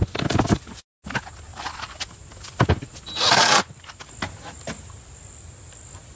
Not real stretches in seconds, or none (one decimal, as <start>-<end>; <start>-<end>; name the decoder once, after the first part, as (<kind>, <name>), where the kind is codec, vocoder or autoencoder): 1.5-5.2 (vocoder, BigVGAN v2)